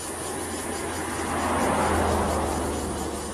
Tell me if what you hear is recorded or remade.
recorded